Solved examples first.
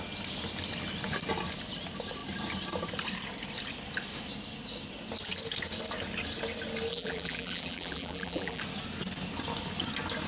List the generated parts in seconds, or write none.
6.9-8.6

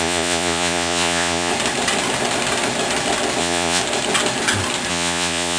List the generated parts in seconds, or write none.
0.0-1.5; 3.4-3.8; 4.9-5.6

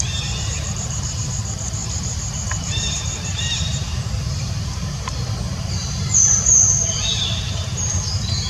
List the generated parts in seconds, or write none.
0.0-8.5

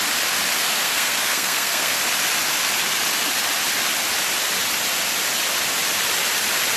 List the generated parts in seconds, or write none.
0.6-2.0

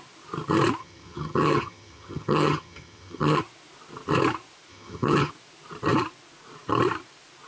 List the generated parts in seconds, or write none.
0.8-3.4; 4.7-5.3

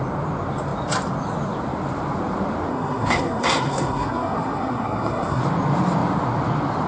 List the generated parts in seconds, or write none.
2.7-5.4